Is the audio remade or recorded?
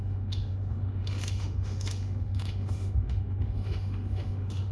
remade